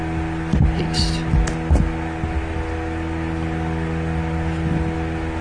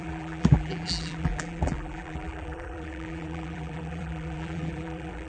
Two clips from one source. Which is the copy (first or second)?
second